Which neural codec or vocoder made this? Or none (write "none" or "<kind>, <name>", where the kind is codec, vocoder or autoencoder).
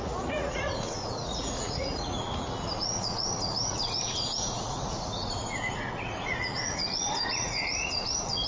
vocoder, Vocos